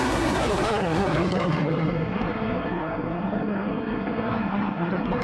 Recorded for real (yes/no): no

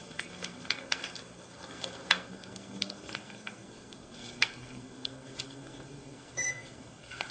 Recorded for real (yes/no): no